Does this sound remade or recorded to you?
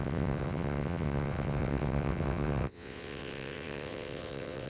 remade